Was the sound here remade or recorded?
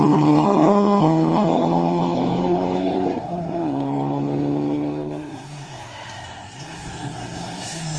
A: remade